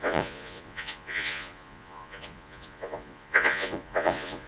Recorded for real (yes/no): no